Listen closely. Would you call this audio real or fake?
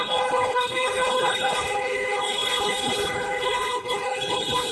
fake